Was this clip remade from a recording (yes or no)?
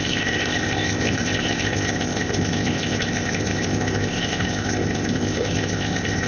yes